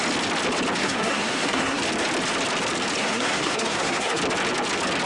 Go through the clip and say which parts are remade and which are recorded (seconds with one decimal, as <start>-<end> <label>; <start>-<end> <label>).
0.0-0.8 recorded; 0.8-1.8 remade; 1.8-3.0 recorded; 3.0-4.2 remade; 4.2-5.1 recorded